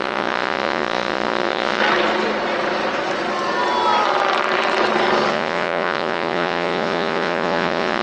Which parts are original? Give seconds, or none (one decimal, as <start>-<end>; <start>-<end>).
1.8-5.3